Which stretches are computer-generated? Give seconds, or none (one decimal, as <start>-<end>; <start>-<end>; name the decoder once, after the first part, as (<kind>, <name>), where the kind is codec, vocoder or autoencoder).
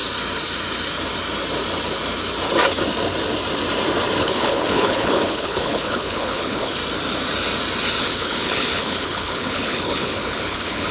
4.2-6.8 (codec, HILCodec); 8.0-10.9